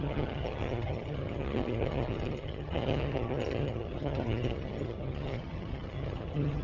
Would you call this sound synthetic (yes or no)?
yes